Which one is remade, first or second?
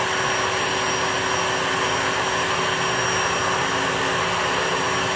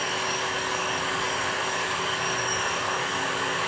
second